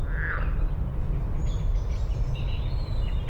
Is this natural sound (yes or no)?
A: yes